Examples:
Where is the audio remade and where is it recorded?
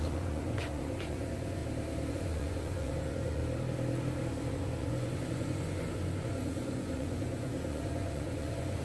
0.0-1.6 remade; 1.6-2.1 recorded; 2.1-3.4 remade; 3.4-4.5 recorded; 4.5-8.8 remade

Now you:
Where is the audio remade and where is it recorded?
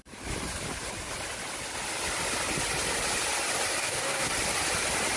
0.0-3.8 recorded; 3.8-4.3 remade; 4.3-5.2 recorded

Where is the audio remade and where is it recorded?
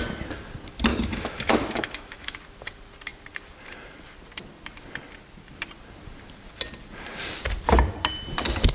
0.0-0.9 recorded; 0.9-2.4 remade; 2.4-8.7 recorded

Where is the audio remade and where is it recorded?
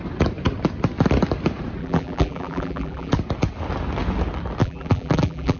0.0-1.8 recorded; 1.8-3.1 remade; 3.1-4.6 recorded; 4.6-5.6 remade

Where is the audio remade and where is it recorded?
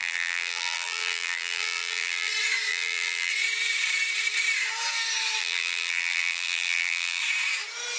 0.0-2.3 remade; 2.3-2.7 recorded; 2.7-3.3 remade; 3.3-5.4 recorded; 5.4-7.2 remade; 7.2-8.0 recorded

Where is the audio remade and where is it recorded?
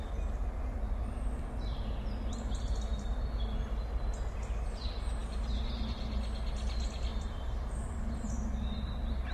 0.0-7.1 recorded; 7.1-7.7 remade; 7.7-9.3 recorded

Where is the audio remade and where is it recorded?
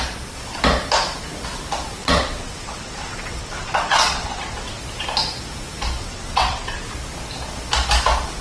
0.0-2.0 recorded; 2.0-4.8 remade; 4.8-6.0 recorded; 6.0-6.9 remade; 6.9-8.4 recorded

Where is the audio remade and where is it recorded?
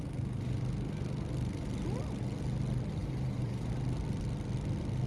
0.0-3.0 recorded; 3.0-3.7 remade; 3.7-5.1 recorded